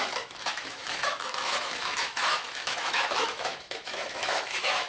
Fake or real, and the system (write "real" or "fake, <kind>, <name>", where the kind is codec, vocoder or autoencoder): fake, autoencoder, DAC-VAE